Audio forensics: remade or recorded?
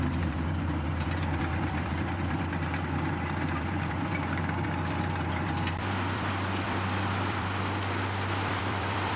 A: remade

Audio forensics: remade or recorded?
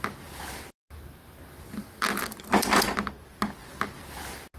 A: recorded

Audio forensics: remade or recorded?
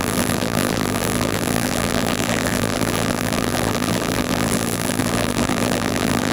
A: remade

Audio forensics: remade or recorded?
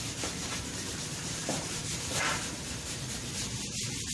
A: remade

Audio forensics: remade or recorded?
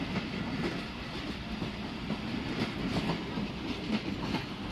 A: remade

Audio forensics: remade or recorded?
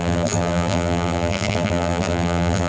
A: remade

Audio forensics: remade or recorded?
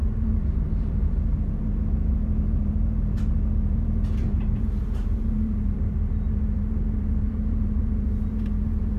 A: remade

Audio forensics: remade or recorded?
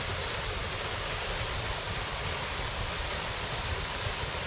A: remade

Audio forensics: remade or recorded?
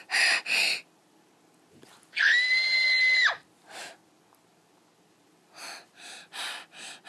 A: recorded